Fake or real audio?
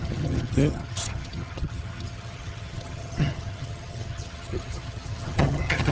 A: fake